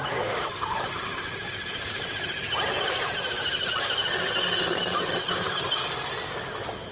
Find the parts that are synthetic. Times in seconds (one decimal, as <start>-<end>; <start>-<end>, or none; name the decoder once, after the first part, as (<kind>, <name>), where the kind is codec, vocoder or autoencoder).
none